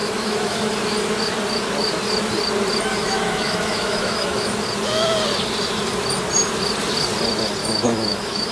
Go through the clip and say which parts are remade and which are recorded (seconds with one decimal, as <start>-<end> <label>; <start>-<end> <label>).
0.0-0.7 remade; 0.7-3.0 recorded; 3.0-4.5 remade; 4.5-7.6 recorded; 7.6-8.5 remade

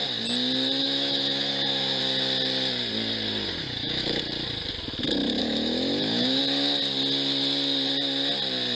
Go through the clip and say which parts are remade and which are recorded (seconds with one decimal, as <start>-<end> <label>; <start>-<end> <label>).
0.0-0.8 recorded; 0.8-2.0 remade; 2.0-3.6 recorded; 3.6-4.2 remade; 4.2-5.4 recorded; 5.4-6.4 remade; 6.4-8.7 recorded

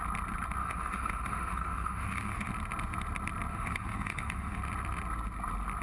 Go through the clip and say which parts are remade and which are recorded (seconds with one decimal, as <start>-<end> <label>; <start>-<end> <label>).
0.0-0.6 recorded; 0.6-2.5 remade; 2.5-3.5 recorded; 3.5-4.6 remade; 4.6-5.8 recorded

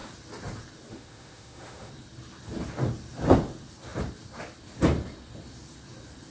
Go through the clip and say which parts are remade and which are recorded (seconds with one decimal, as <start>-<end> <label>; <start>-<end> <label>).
0.0-0.9 recorded; 0.9-1.9 remade; 1.9-6.3 recorded